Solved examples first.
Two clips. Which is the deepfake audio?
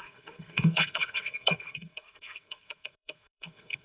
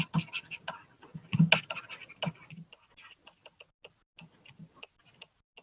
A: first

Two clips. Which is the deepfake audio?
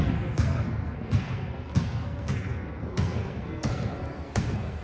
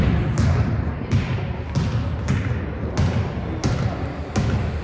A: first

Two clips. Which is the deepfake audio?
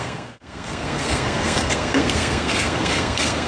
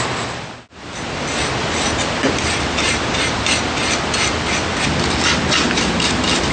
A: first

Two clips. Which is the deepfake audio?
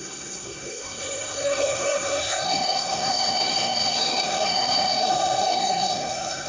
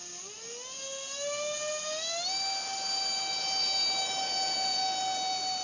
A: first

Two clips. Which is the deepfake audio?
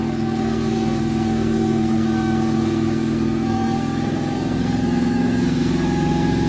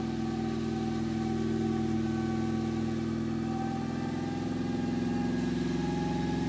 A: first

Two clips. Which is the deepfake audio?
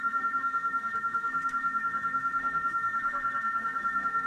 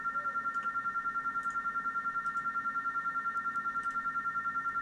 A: first